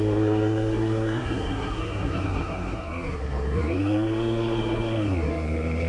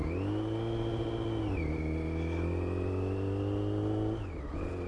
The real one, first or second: second